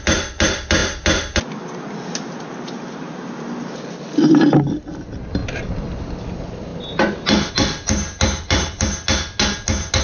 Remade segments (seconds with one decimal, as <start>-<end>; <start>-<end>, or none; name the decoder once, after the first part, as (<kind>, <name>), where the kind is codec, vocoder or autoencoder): none